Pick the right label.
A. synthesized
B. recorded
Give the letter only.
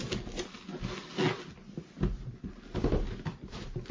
B